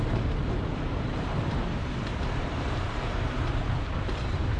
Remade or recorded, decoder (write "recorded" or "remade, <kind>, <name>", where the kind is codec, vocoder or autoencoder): remade, vocoder, BigVGAN v2